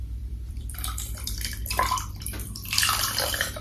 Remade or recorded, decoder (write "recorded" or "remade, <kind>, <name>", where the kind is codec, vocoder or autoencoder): remade, vocoder, BigVGAN v2